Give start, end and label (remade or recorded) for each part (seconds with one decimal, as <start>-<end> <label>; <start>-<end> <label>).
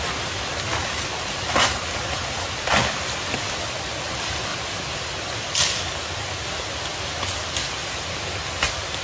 0.0-9.0 recorded